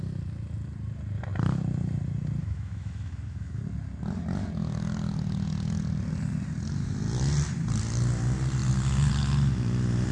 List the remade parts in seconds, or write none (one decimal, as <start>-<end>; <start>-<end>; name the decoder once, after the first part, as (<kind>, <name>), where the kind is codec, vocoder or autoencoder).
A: 2.4-3.6 (autoencoder, DAC-VAE)